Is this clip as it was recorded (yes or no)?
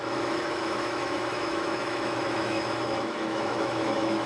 no